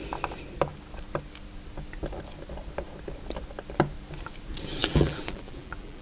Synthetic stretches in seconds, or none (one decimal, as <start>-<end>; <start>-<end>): 4.8-6.0